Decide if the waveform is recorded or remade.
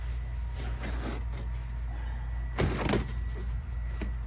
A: recorded